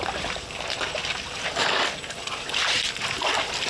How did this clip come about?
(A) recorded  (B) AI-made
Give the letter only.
A